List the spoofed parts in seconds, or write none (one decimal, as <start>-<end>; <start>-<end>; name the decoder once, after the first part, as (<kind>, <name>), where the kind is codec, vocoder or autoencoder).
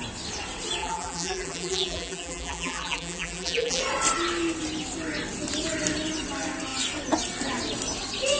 0.8-3.8 (vocoder, BigVGAN v2)